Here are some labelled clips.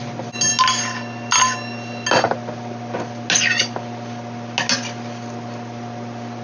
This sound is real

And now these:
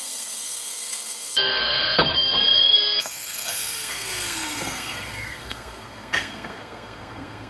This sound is fake